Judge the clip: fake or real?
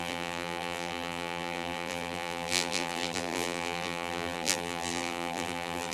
fake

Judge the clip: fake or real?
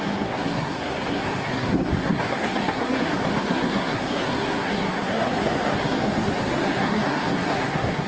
fake